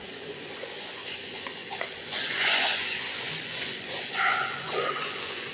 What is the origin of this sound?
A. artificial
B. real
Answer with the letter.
A